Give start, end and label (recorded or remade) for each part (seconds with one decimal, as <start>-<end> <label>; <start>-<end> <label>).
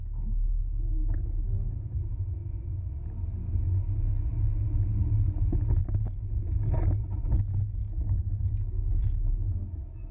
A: 0.0-10.1 recorded